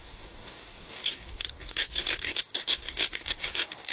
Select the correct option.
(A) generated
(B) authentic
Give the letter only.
A